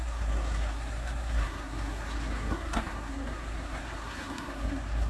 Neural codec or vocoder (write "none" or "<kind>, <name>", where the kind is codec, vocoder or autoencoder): codec, SNAC